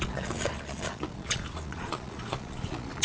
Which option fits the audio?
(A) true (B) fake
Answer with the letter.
B